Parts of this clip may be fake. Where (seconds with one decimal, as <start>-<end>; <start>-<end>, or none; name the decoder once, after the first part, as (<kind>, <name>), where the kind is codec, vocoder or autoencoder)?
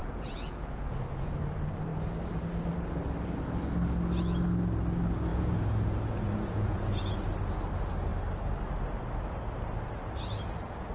0.0-1.3 (vocoder, Vocos); 5.3-7.1